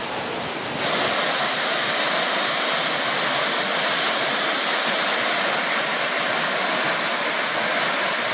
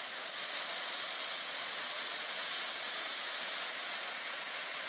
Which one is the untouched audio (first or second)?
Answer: first